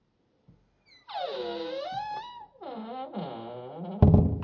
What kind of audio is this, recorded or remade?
recorded